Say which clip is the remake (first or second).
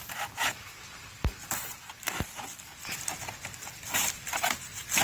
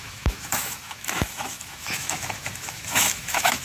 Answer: second